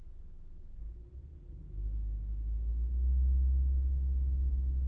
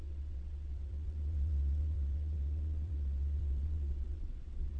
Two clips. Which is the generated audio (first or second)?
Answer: second